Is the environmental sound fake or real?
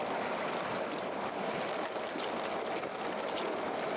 real